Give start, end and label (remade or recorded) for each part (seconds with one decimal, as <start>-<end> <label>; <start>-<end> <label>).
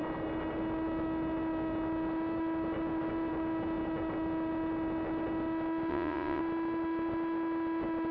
0.0-5.9 recorded; 5.9-6.4 remade; 6.4-8.1 recorded